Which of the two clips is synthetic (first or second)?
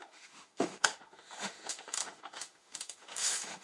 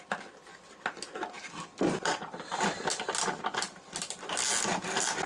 first